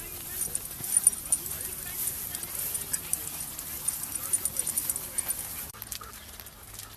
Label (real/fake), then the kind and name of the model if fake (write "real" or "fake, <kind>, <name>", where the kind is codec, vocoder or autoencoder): real